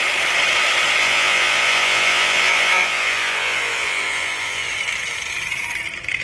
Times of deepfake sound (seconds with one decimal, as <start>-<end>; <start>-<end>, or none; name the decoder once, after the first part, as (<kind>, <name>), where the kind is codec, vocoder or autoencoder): 1.0-4.7 (vocoder, Vocos)

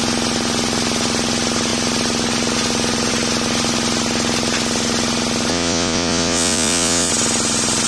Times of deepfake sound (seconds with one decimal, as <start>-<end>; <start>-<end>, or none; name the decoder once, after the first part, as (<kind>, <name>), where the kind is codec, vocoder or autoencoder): 5.5-7.1 (vocoder, Vocos)

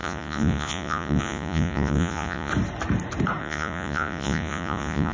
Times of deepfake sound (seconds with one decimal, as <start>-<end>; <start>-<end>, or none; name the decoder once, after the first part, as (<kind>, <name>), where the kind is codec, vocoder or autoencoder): 0.0-2.5 (vocoder, Vocos); 3.4-5.1

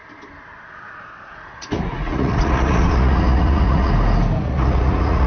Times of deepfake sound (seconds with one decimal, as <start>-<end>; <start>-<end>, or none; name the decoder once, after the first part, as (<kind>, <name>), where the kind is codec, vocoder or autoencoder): 1.3-3.9 (vocoder, Vocos); 4.4-5.3

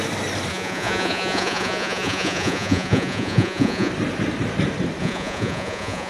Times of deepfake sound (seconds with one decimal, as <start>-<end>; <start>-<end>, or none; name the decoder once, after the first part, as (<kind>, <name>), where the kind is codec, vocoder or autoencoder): 0.5-3.9 (vocoder, Vocos); 5.0-6.1

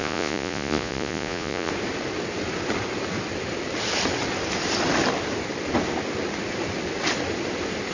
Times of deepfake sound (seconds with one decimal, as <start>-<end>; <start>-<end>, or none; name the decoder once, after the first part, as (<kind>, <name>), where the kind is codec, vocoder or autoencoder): 0.0-1.7 (vocoder, Vocos)